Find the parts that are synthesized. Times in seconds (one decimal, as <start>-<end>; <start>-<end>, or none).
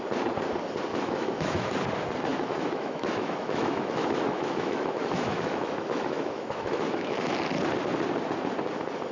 0.9-1.7; 2.3-7.3